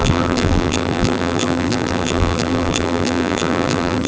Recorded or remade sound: remade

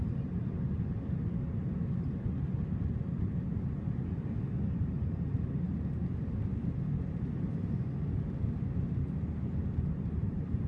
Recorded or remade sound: recorded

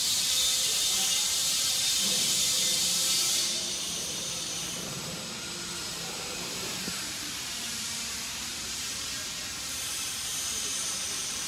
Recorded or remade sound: remade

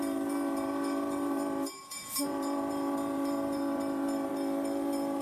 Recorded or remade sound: remade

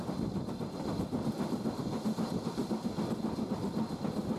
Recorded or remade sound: recorded